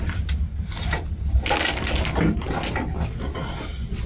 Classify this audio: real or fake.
real